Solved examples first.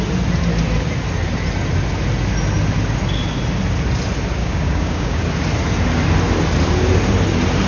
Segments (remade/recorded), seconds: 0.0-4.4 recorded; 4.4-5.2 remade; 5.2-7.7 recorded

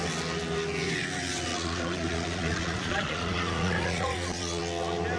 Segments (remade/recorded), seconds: 0.0-1.5 recorded; 1.5-4.6 remade; 4.6-5.2 recorded